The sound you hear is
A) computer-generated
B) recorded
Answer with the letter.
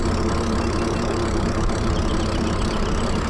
A